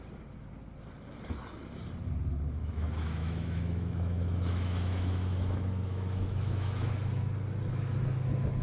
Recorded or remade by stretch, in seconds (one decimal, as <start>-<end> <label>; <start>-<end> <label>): 0.0-2.6 recorded; 2.6-6.9 remade; 6.9-8.6 recorded